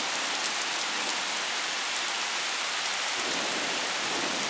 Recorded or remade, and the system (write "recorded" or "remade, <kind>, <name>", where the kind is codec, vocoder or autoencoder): remade, vocoder, BigVGAN v2